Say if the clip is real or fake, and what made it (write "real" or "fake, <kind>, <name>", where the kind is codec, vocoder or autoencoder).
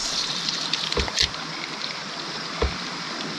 fake, vocoder, BigVGAN v2